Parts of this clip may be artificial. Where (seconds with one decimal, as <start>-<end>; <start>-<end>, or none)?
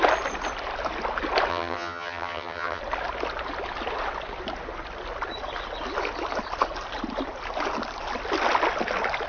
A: 1.5-2.8